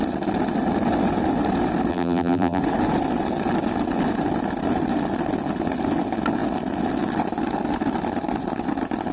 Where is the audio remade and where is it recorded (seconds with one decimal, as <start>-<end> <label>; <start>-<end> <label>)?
0.0-1.9 recorded; 1.9-2.6 remade; 2.6-9.1 recorded